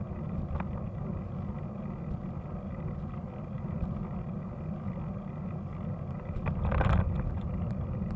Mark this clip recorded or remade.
recorded